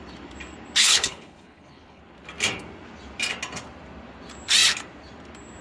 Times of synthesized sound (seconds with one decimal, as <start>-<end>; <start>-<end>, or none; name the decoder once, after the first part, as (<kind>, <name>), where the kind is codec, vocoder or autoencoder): 0.8-2.0 (codec, HILCodec)